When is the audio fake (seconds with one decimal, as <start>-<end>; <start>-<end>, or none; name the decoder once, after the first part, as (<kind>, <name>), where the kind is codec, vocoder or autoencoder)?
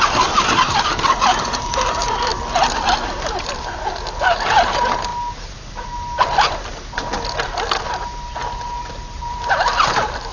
0.0-2.3 (vocoder, BigVGAN v2); 3.0-5.1; 8.9-10.3